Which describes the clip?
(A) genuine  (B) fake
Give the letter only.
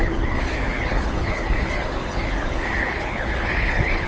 B